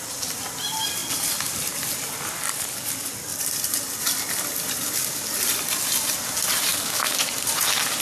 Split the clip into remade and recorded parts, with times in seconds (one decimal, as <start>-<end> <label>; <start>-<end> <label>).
0.0-6.7 recorded; 6.7-7.3 remade; 7.3-8.0 recorded